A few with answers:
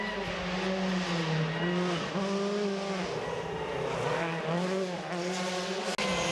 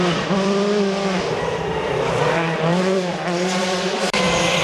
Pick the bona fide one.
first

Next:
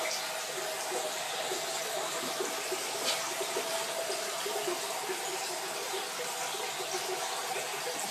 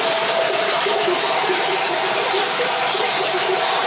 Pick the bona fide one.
first